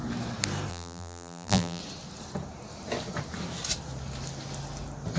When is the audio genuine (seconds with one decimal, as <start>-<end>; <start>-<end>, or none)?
0.0-0.7; 1.8-5.2